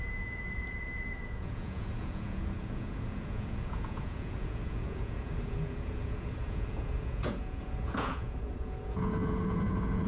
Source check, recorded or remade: remade